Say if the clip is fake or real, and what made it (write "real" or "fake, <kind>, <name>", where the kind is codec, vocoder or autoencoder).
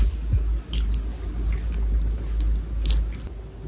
real